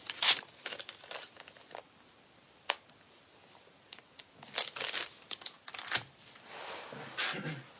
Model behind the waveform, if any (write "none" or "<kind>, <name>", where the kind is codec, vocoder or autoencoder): none